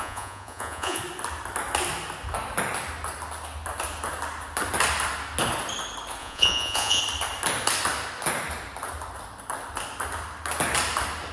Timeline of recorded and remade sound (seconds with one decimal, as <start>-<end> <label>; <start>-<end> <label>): 0.0-1.0 remade; 1.0-6.2 recorded; 6.2-7.0 remade; 7.0-11.3 recorded